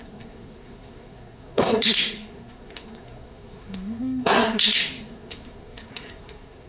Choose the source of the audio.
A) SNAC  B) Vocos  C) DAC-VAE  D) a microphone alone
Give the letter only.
A